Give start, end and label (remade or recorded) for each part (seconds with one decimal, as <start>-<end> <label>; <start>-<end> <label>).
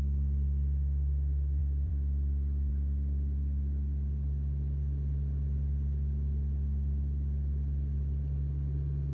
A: 0.0-1.6 recorded; 1.6-2.7 remade; 2.7-9.1 recorded